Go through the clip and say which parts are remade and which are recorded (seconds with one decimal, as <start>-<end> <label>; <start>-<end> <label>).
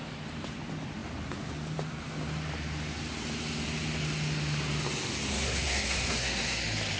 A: 0.0-5.3 recorded; 5.3-6.6 remade; 6.6-7.0 recorded